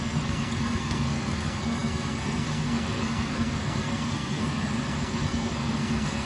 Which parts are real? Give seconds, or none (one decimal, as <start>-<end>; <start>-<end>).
none